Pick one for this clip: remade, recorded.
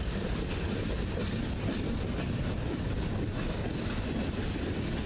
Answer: recorded